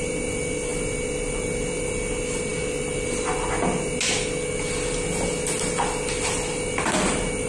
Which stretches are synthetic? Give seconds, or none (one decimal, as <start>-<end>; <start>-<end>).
none